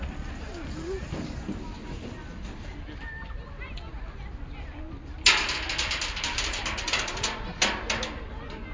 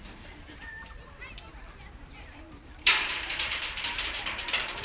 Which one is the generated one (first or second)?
second